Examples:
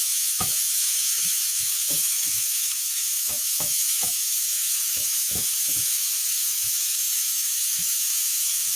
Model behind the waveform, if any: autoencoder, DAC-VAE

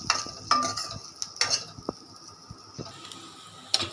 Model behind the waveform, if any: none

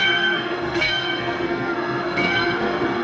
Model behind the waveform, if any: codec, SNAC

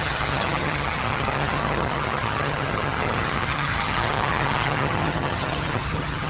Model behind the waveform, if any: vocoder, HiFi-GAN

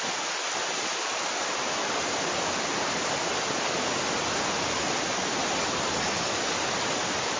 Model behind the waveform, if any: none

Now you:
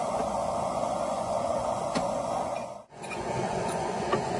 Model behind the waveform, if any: vocoder, Vocos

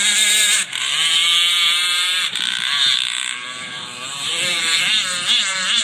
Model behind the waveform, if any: vocoder, BigVGAN v2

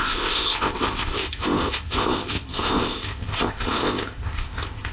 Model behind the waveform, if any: codec, ZipCodec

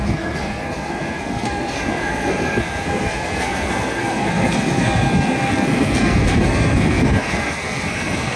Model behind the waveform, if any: codec, SNAC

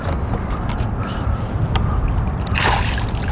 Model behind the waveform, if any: none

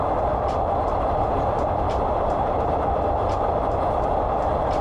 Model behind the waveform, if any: vocoder, BigVGAN v2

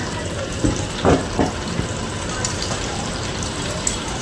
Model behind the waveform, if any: vocoder, BigVGAN v2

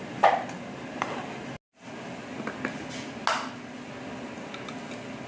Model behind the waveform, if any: none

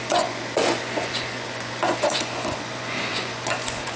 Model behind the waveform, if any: vocoder, Vocos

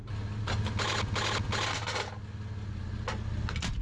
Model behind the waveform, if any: none